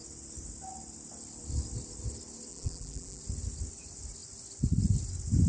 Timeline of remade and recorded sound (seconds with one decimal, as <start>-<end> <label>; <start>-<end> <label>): 0.0-2.5 recorded; 2.5-3.2 remade; 3.2-5.5 recorded